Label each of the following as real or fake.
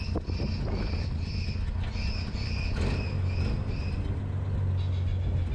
real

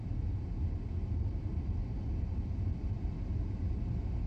real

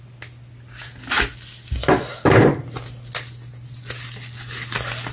real